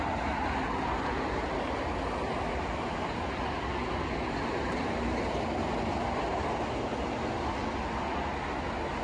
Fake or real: real